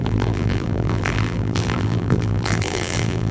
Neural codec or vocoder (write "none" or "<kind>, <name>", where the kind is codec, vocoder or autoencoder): vocoder, BigVGAN v2